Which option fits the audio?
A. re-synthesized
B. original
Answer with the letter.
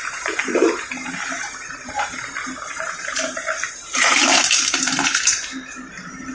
A